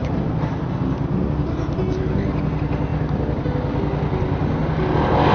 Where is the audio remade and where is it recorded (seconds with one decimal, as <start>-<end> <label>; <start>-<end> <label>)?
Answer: 0.0-5.3 recorded